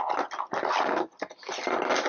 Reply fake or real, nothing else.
real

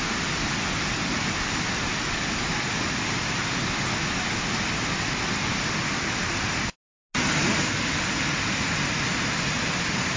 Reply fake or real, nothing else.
real